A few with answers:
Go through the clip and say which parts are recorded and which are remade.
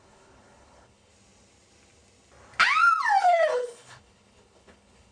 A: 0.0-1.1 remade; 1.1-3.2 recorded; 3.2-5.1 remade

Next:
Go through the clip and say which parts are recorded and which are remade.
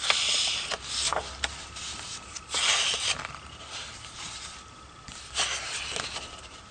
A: 0.0-6.7 recorded